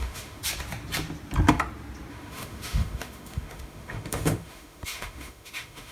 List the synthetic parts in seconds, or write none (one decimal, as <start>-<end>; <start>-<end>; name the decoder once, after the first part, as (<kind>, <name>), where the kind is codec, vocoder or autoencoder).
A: 0.0-0.4 (autoencoder, DAC-VAE); 2.1-5.9